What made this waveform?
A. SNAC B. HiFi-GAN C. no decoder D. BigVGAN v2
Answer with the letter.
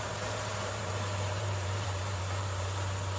D